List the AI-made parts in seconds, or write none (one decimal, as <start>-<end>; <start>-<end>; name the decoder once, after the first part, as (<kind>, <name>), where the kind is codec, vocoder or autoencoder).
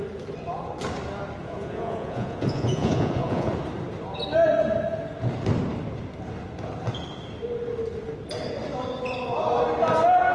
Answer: 1.4-3.5 (vocoder, Vocos)